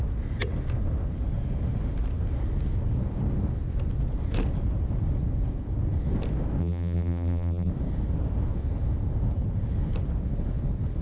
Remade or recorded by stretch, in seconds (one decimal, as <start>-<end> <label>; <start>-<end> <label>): 0.0-6.6 recorded; 6.6-7.7 remade; 7.7-11.0 recorded